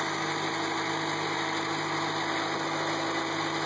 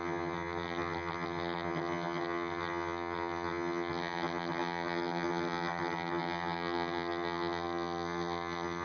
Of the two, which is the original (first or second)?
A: first